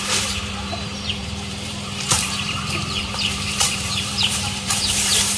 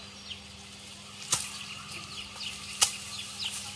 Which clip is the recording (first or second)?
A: second